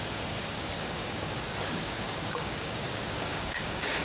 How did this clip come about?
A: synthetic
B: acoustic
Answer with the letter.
A